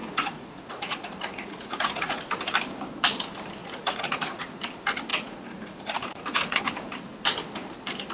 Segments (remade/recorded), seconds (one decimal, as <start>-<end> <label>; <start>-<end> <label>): 0.0-2.2 remade; 2.2-3.6 recorded; 3.6-4.4 remade; 4.4-5.1 recorded; 5.1-6.6 remade; 6.6-8.1 recorded